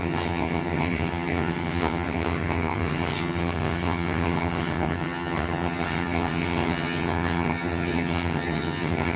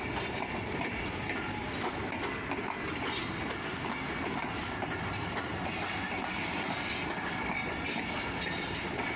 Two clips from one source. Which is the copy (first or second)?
first